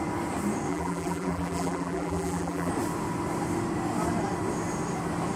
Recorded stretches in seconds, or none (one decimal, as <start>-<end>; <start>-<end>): 0.0-0.7; 2.7-5.4